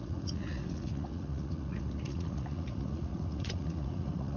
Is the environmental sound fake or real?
fake